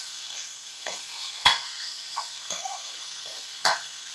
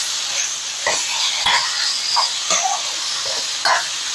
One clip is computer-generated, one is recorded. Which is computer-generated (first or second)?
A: first